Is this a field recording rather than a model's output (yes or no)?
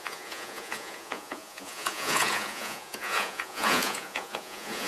no